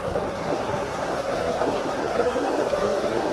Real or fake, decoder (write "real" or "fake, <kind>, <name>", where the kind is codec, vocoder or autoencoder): fake, codec, SNAC